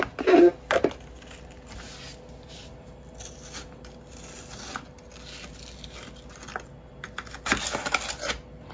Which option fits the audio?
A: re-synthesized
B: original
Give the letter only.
B